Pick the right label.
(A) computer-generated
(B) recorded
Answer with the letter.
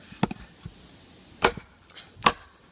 B